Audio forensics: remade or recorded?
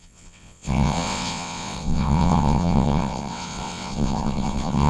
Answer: remade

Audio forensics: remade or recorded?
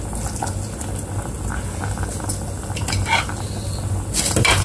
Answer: recorded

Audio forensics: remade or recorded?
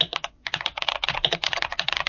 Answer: remade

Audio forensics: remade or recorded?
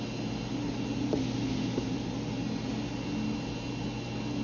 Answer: recorded